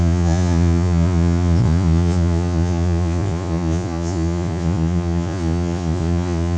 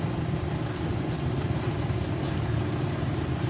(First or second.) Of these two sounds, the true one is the second